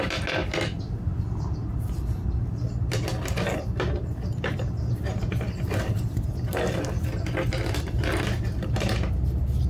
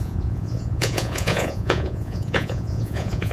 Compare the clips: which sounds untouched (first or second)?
first